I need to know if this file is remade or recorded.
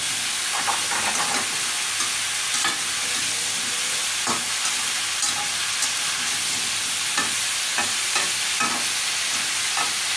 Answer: recorded